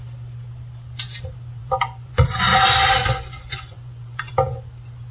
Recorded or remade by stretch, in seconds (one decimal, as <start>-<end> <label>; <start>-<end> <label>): 0.0-1.6 recorded; 1.6-2.5 remade; 2.5-3.0 recorded; 3.0-4.3 remade; 4.3-5.1 recorded